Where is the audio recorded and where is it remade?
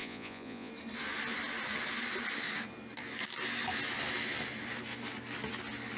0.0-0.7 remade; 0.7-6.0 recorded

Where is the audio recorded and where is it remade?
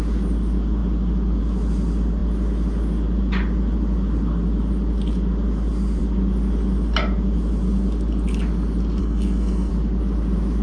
0.0-9.0 recorded; 9.0-9.7 remade; 9.7-10.6 recorded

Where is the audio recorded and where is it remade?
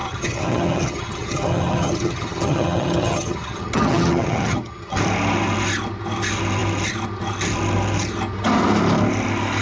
0.0-5.0 remade; 5.0-9.6 recorded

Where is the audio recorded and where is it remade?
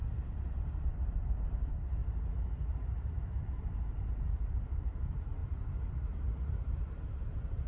0.0-2.0 remade; 2.0-3.0 recorded; 3.0-7.7 remade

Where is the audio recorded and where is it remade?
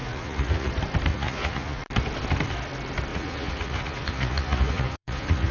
0.0-0.7 remade; 0.7-1.1 recorded; 1.1-1.8 remade; 1.8-3.1 recorded; 3.1-5.5 remade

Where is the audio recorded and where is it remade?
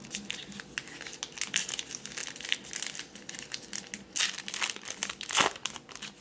0.0-6.2 recorded